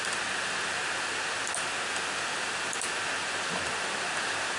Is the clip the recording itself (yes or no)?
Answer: yes